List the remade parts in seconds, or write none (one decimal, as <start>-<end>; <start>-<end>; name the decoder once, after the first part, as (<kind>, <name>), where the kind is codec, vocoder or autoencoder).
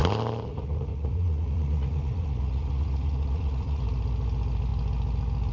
0.5-3.8 (vocoder, Vocos)